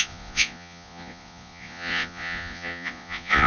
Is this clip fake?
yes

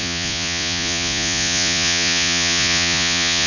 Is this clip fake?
yes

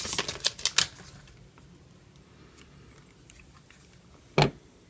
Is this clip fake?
no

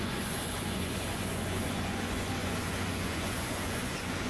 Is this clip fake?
yes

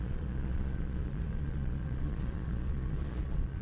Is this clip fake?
yes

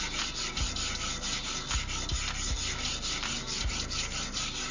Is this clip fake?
no